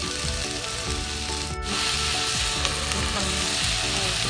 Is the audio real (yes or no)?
yes